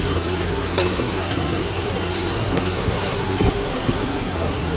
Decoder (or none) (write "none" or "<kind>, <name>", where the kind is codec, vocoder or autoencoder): codec, SNAC